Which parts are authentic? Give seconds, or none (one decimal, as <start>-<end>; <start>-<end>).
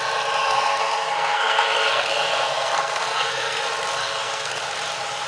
0.0-0.4; 3.6-4.0; 4.6-5.3